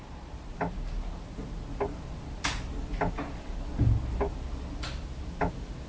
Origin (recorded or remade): recorded